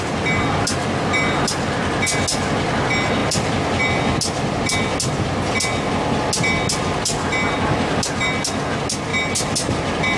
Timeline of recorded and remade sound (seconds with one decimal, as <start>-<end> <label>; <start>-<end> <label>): 0.0-10.2 recorded